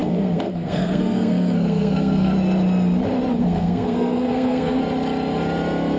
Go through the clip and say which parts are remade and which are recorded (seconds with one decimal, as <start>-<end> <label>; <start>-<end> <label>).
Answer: 0.0-2.3 remade; 2.3-3.4 recorded; 3.4-4.8 remade; 4.8-6.0 recorded